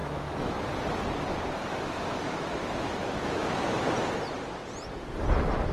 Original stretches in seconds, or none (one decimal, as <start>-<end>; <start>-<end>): 0.7-1.6; 3.8-5.7